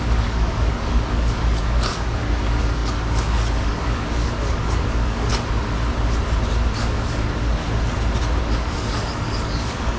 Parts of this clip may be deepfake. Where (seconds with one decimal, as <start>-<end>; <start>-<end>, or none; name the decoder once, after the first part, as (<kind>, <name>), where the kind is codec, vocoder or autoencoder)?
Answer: 0.0-5.3 (codec, DAC); 6.8-7.6; 8.4-10.0